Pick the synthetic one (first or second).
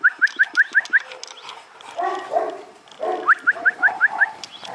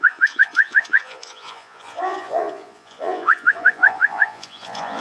second